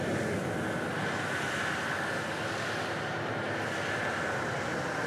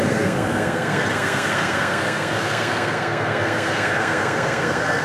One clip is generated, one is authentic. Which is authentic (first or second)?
first